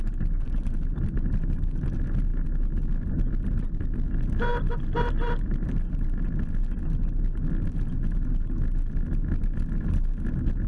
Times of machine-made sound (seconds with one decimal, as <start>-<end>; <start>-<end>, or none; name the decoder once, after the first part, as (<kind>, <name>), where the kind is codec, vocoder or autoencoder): none